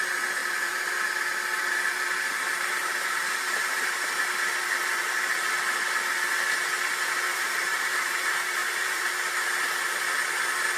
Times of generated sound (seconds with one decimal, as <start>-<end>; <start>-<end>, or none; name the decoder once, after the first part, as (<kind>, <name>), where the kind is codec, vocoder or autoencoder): 0.4-0.9 (vocoder, BigVGAN v2); 2.8-4.3; 7.3-8.1; 8.6-9.1